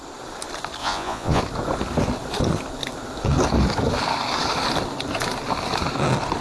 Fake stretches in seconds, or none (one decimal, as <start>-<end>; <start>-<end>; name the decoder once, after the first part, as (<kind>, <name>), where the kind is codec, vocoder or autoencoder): 0.8-1.4 (vocoder, Vocos)